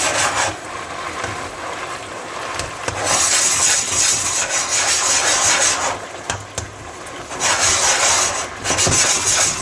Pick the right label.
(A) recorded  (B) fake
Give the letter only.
A